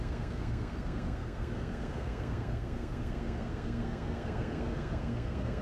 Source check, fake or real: fake